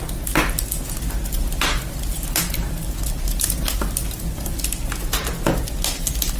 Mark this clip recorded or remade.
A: recorded